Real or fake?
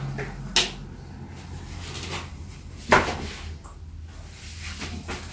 real